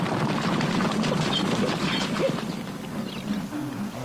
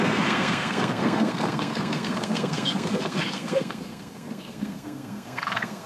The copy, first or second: second